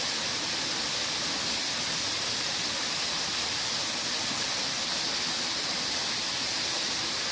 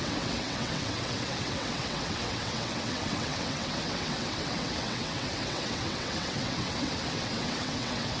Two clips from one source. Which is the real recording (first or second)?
first